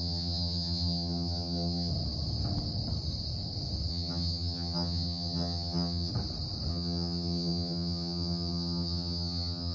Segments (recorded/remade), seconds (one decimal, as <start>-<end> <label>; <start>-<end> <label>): 0.0-1.9 remade; 1.9-3.9 recorded; 3.9-6.1 remade; 6.1-6.7 recorded; 6.7-9.7 remade